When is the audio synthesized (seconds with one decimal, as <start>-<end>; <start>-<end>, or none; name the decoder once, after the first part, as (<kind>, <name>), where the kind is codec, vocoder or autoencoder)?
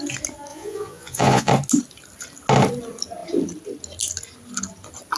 0.5-1.5 (vocoder, Vocos)